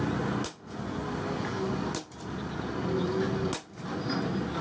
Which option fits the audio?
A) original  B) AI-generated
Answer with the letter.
A